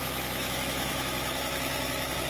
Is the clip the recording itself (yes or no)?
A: no